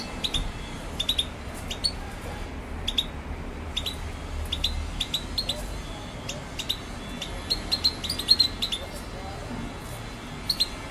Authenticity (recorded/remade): recorded